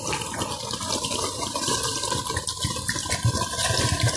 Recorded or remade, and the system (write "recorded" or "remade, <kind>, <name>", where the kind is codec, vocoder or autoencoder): recorded